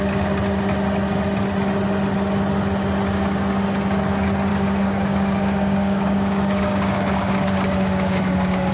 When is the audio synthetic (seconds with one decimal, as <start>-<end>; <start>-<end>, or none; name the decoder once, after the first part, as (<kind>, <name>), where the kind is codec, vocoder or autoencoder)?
4.5-8.7 (codec, DAC)